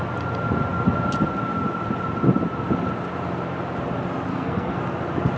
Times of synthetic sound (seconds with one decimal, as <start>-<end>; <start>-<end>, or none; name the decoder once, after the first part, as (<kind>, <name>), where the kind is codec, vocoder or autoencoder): 4.3-4.8 (codec, SNAC)